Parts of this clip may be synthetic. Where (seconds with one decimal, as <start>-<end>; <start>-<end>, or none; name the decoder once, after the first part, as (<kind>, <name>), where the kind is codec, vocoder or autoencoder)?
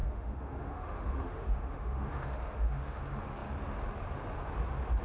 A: 0.0-3.0 (autoencoder, DAC-VAE)